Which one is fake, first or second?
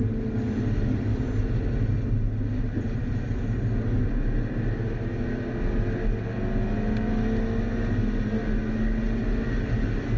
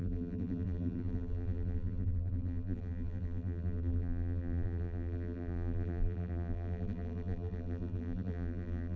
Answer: second